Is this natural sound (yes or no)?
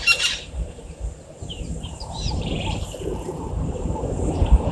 no